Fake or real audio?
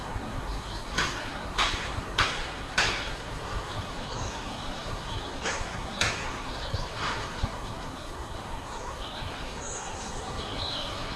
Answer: fake